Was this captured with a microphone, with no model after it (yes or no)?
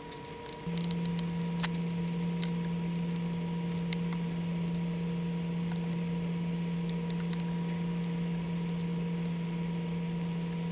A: yes